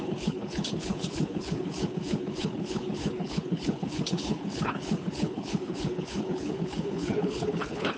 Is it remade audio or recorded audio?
remade